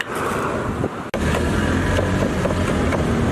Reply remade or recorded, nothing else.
recorded